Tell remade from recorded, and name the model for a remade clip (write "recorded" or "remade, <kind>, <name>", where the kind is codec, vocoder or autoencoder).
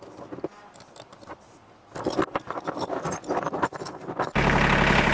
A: recorded